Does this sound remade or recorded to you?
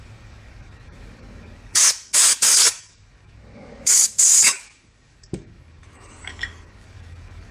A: remade